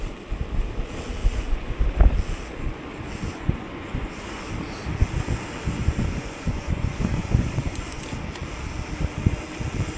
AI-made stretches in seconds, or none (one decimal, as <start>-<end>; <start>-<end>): 1.2-1.7; 3.3-4.4; 5.8-8.0